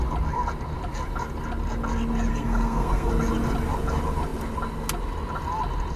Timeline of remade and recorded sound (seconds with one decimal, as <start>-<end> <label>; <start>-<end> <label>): 0.0-2.3 recorded; 2.3-3.1 remade; 3.1-6.0 recorded